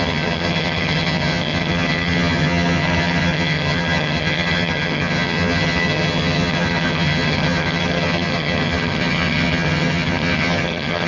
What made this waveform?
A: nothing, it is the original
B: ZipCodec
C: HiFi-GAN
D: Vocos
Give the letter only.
C